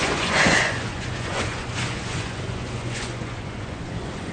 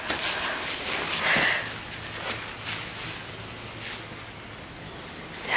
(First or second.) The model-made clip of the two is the first